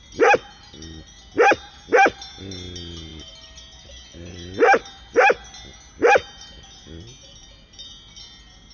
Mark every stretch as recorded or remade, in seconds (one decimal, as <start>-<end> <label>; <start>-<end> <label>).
0.0-8.7 recorded